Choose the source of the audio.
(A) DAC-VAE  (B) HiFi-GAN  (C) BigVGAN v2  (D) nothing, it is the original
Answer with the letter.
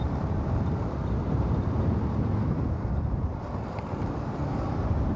C